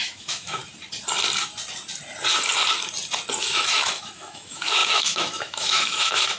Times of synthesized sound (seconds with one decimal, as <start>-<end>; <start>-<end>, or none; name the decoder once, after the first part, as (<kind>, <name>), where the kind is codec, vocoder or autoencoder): 0.0-0.6 (autoencoder, DAC-VAE); 3.4-6.4